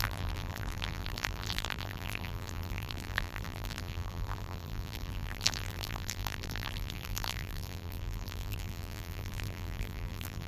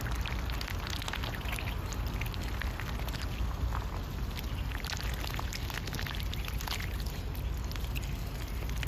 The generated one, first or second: first